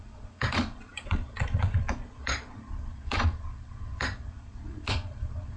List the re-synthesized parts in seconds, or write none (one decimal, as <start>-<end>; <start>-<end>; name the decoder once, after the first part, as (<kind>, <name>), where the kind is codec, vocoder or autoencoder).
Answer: 0.0-5.6 (vocoder, Vocos)